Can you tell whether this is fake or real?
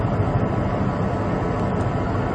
real